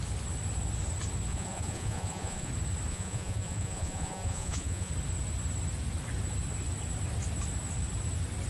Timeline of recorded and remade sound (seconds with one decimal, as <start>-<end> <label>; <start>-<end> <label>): 0.0-1.3 recorded; 1.3-2.5 remade; 2.5-2.9 recorded; 2.9-4.9 remade; 4.9-8.5 recorded

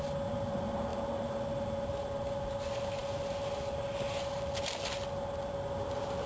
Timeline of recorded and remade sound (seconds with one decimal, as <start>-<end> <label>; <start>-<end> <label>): 0.0-6.3 recorded

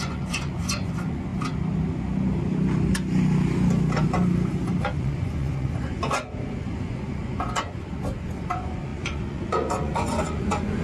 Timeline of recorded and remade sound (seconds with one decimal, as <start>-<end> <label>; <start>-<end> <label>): 0.0-1.3 remade; 1.3-5.0 recorded; 5.0-10.8 remade

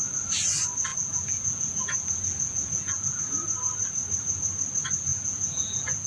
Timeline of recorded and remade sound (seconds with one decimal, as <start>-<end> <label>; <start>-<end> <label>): 0.0-0.9 recorded; 0.9-3.2 remade; 3.2-5.1 recorded; 5.1-6.1 remade

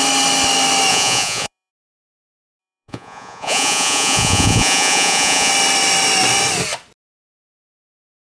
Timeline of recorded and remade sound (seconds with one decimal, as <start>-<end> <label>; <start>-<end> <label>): 0.0-0.9 recorded; 0.9-1.7 remade; 1.7-2.6 recorded; 2.6-5.5 remade; 5.5-8.3 recorded

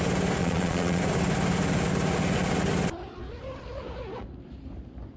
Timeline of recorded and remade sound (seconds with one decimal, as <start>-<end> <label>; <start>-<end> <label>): 0.0-0.4 recorded; 0.4-1.0 remade; 1.0-5.2 recorded

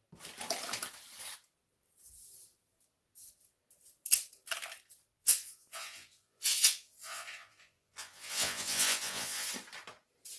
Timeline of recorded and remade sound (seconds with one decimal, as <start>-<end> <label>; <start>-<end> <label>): 0.0-5.2 recorded; 5.2-9.5 remade; 9.5-10.4 recorded